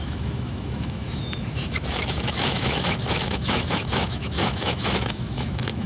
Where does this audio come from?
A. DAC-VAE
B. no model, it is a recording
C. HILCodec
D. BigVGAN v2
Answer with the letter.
A